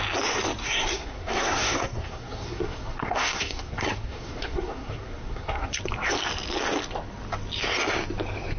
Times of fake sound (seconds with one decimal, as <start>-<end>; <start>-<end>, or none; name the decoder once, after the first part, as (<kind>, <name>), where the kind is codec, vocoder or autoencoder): 0.6-5.8 (codec, SNAC)